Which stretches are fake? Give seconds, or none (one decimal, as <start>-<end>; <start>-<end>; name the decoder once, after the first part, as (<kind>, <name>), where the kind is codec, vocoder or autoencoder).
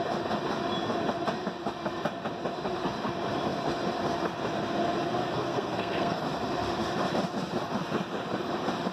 5.2-6.2 (codec, SNAC)